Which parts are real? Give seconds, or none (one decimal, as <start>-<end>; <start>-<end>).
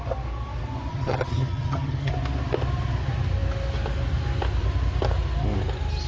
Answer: 0.0-0.9; 2.1-6.1